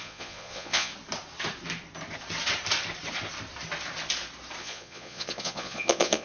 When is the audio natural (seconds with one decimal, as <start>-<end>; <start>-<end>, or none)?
0.9-4.6